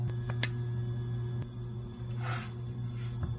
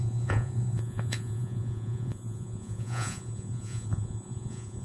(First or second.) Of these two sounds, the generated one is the second